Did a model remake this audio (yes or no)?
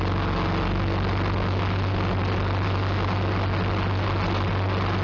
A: no